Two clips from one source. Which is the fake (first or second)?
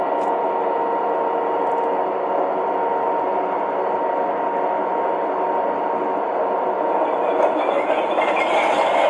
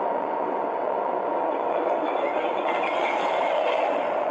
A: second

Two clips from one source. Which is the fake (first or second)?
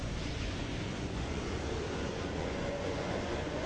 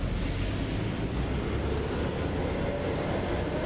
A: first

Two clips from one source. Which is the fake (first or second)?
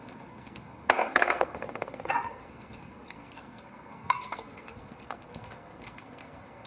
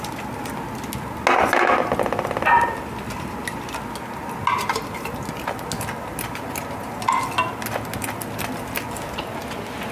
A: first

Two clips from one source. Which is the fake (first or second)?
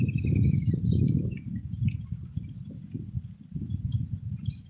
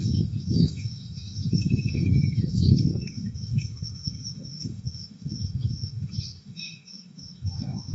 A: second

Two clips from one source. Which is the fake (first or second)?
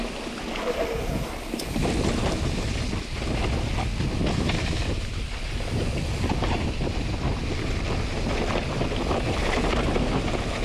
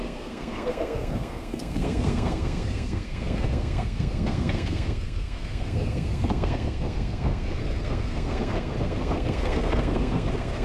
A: second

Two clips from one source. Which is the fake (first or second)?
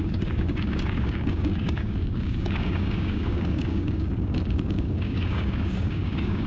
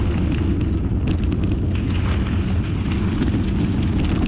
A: first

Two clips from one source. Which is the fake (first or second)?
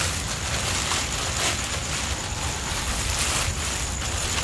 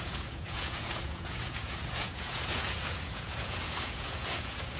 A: second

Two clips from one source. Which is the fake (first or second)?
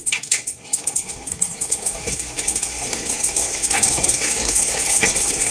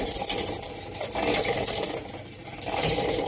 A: first